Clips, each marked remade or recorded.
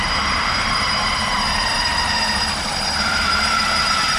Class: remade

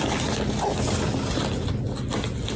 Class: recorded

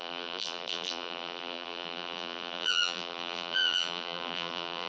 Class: remade